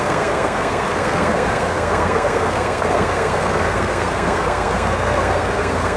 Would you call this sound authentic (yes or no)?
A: no